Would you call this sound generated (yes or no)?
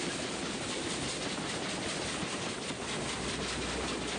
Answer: no